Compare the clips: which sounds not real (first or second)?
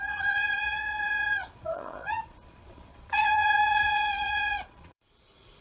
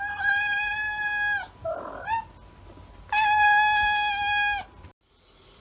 first